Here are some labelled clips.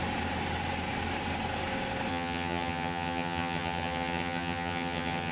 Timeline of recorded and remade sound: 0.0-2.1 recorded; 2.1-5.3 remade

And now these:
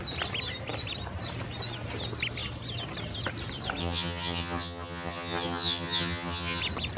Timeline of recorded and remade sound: 0.0-3.8 recorded; 3.8-6.6 remade; 6.6-7.0 recorded

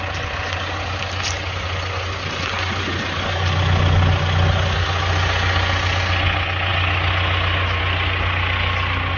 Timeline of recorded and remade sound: 0.0-9.2 recorded

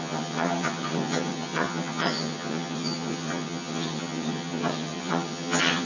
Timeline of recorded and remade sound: 0.0-5.9 remade

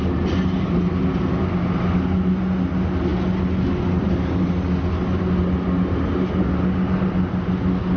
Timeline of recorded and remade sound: 0.0-8.0 recorded

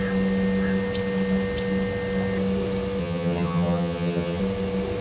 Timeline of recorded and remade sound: 0.0-3.0 recorded; 3.0-4.4 remade; 4.4-5.0 recorded

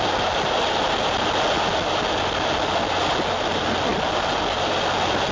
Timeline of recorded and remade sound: 0.0-5.3 recorded

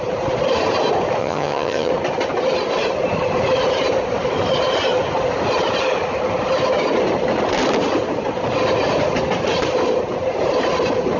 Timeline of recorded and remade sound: 0.0-1.2 recorded; 1.2-1.9 remade; 1.9-11.2 recorded